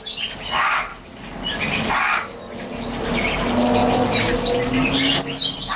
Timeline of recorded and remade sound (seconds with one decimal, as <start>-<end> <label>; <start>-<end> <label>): 0.0-5.8 recorded